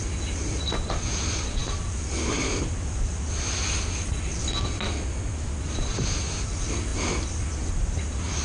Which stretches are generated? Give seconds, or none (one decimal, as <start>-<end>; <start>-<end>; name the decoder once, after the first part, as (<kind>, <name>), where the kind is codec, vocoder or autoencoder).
none